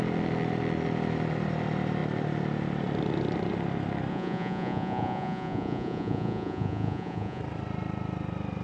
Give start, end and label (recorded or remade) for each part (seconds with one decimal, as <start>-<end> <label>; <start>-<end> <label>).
0.0-4.1 recorded; 4.1-7.4 remade; 7.4-8.6 recorded